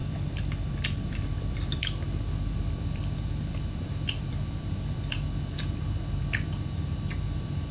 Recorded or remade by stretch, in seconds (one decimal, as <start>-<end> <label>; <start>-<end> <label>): 0.0-7.7 remade